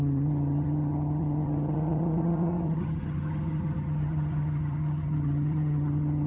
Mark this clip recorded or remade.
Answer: remade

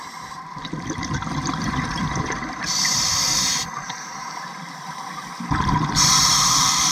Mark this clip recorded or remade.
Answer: remade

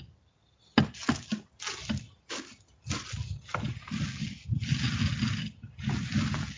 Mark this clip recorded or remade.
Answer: recorded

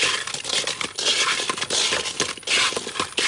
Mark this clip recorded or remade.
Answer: recorded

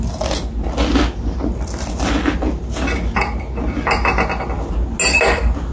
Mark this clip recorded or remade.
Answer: recorded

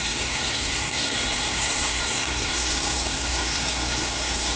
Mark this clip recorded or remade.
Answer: remade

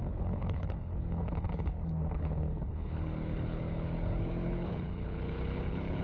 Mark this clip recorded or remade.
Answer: remade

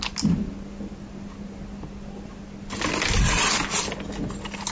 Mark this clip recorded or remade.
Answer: recorded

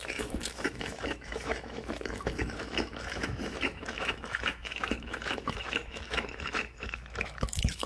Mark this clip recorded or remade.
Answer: remade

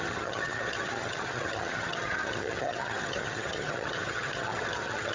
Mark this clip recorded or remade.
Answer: remade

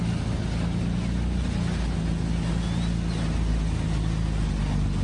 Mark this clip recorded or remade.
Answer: recorded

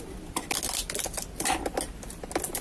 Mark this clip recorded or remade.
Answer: recorded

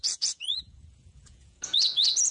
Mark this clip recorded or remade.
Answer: remade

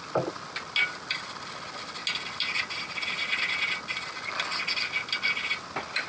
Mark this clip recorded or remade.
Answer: recorded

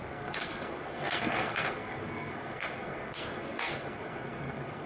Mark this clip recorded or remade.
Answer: remade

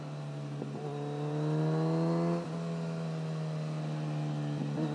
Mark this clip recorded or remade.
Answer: recorded